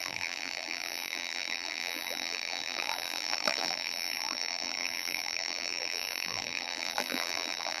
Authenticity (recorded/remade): remade